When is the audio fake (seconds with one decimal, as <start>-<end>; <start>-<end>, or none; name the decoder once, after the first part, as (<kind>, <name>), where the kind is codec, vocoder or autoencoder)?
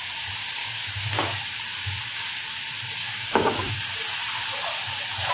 0.6-1.4 (codec, DAC); 3.0-3.7